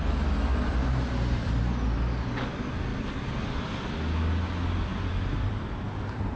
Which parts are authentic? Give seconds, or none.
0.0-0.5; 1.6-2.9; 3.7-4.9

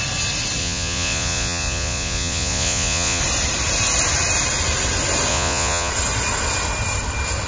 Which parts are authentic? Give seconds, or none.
0.0-0.6; 3.2-5.3; 5.9-7.5

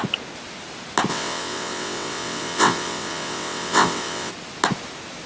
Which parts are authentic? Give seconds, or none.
0.0-1.1; 4.3-5.3

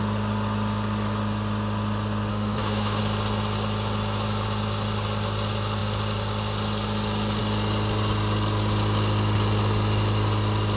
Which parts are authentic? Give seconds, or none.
0.0-2.3; 3.0-10.8

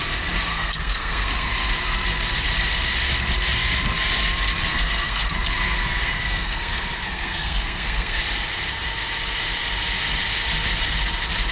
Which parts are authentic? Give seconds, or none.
0.0-0.5; 1.5-4.7; 5.3-5.8; 8.2-11.5

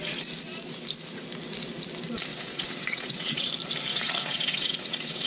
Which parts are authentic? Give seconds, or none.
0.0-2.3; 3.5-3.9

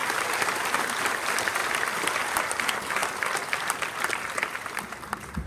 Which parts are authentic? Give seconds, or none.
0.0-3.0; 4.8-5.5

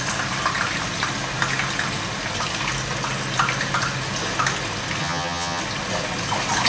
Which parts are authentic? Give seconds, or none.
0.0-5.0; 5.6-6.7